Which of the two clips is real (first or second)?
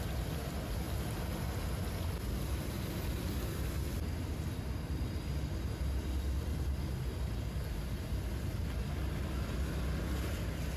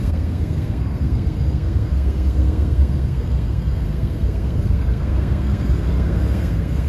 first